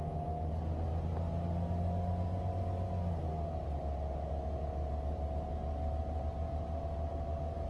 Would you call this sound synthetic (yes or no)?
no